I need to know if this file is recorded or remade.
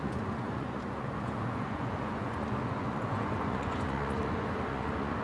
remade